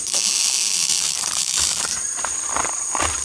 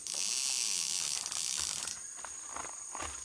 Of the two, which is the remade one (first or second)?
first